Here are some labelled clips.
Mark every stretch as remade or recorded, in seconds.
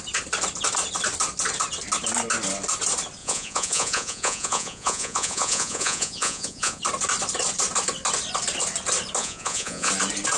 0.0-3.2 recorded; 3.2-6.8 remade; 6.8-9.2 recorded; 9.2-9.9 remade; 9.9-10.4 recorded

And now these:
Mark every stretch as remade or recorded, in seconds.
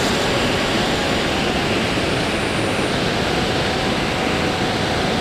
0.0-5.2 recorded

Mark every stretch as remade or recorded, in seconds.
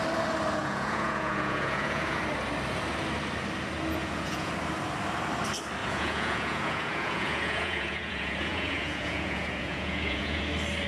0.0-0.6 recorded; 0.6-2.2 remade; 2.2-4.0 recorded; 4.0-4.5 remade; 4.5-5.8 recorded; 5.8-10.4 remade; 10.4-10.9 recorded